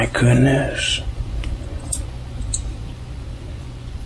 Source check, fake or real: fake